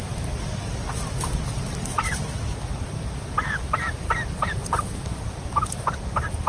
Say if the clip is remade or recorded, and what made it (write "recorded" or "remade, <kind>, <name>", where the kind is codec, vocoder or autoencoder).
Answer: recorded